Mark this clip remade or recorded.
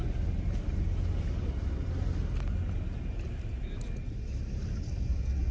recorded